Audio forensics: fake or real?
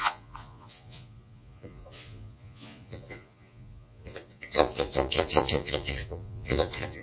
fake